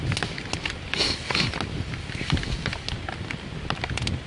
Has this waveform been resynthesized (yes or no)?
no